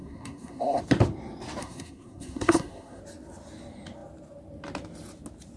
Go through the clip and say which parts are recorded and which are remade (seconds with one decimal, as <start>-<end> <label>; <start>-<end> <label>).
0.0-0.8 remade; 0.8-1.6 recorded; 1.6-3.0 remade; 3.0-5.6 recorded